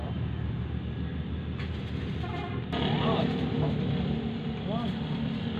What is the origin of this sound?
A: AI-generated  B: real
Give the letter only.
B